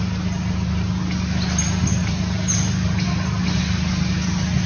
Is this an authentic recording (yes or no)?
yes